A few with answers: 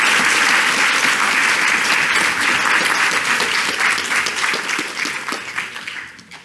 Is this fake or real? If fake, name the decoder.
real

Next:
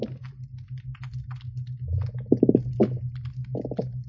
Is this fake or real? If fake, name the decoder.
real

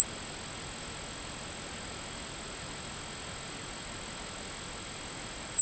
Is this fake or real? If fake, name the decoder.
real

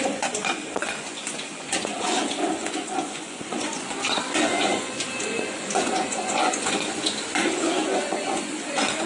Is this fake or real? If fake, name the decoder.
fake, vocoder, Vocos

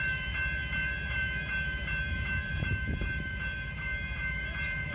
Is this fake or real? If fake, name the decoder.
fake, vocoder, BigVGAN v2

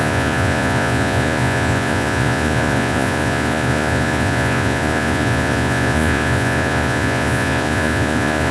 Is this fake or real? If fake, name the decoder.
fake, vocoder, Vocos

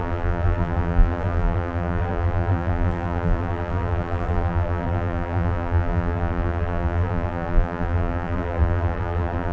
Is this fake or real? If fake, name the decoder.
fake, vocoder, BigVGAN v2